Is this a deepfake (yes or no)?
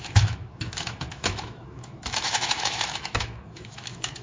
yes